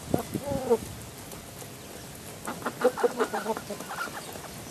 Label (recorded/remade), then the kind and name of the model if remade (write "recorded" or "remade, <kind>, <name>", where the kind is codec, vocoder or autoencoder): recorded